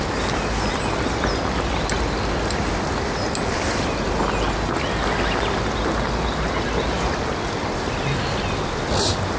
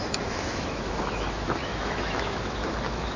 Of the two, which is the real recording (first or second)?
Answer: first